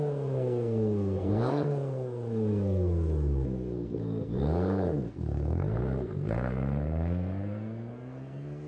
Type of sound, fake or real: fake